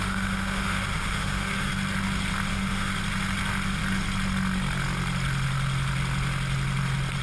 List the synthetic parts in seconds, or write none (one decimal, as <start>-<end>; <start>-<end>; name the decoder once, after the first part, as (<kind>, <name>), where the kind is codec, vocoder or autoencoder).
0.0-1.7 (autoencoder, DAC-VAE); 2.5-2.9